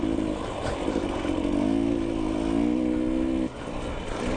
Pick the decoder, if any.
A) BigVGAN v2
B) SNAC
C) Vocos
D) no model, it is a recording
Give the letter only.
D